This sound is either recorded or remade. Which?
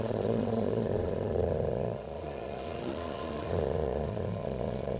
remade